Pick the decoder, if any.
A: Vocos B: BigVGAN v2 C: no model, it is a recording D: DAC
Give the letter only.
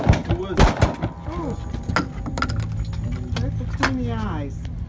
C